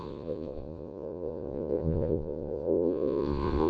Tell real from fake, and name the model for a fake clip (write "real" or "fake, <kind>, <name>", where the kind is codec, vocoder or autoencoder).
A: fake, vocoder, Vocos